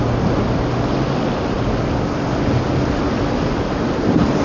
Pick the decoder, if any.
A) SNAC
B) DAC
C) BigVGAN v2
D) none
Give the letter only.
D